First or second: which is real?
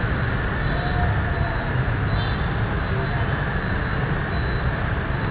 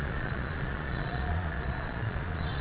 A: first